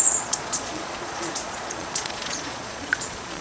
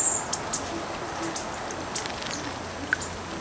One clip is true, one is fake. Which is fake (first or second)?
first